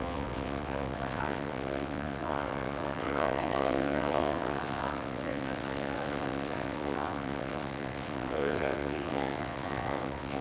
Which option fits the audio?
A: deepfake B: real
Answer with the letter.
A